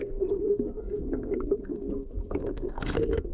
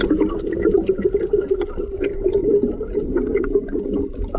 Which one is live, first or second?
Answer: second